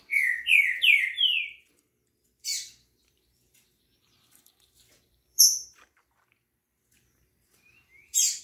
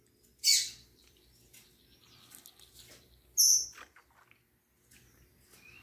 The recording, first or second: second